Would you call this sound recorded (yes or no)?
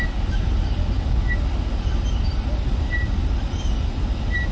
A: yes